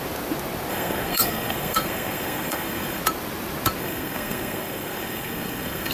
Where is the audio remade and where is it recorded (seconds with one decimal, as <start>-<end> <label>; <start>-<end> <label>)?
0.0-0.7 recorded; 0.7-3.0 remade; 3.0-3.8 recorded; 3.8-5.9 remade